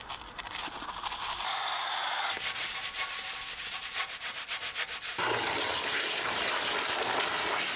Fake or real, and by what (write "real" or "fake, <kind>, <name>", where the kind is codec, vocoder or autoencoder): real